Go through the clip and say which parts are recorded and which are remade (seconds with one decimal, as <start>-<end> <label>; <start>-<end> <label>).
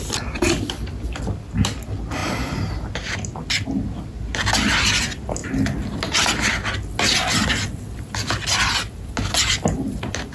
0.0-10.3 recorded